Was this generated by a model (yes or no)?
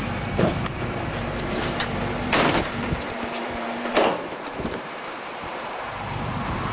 yes